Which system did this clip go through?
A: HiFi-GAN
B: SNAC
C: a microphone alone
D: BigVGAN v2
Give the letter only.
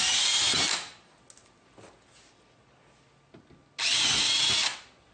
C